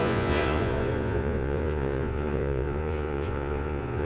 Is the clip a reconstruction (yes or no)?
yes